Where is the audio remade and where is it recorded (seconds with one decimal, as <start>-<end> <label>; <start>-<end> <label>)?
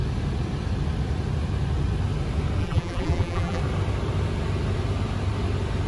0.0-2.6 recorded; 2.6-3.6 remade; 3.6-5.9 recorded